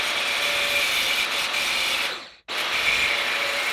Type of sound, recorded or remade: recorded